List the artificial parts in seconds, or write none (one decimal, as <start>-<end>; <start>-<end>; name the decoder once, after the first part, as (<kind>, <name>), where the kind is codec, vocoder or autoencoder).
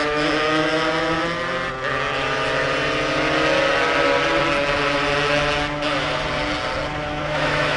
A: 7.1-7.8 (autoencoder, DAC-VAE)